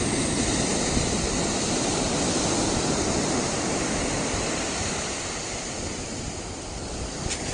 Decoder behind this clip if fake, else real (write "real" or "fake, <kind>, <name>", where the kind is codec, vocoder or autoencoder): real